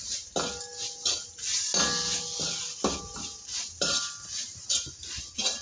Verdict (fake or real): real